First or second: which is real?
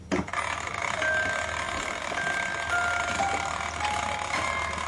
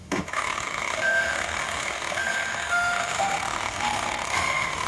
first